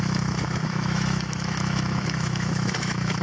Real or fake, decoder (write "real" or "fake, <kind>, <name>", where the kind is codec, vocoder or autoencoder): fake, autoencoder, DAC-VAE